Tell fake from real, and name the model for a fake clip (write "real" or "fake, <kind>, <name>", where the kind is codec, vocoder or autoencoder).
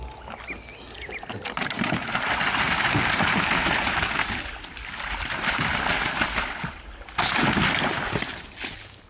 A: real